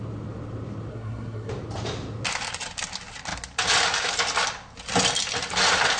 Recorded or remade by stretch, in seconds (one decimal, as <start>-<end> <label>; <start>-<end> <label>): 0.0-0.9 recorded; 0.9-1.5 remade; 1.5-6.0 recorded